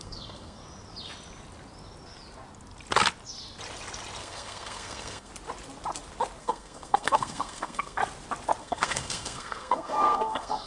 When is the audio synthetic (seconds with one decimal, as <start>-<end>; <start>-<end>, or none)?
0.0-0.6; 4.2-5.3; 6.4-8.0; 8.6-10.7